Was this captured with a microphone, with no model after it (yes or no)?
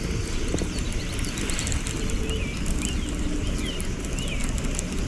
yes